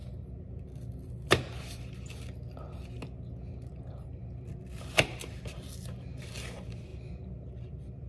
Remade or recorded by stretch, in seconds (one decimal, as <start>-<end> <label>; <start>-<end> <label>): 0.0-3.7 recorded; 3.7-8.1 remade